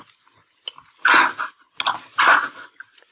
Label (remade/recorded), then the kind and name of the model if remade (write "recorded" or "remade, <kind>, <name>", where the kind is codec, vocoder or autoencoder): recorded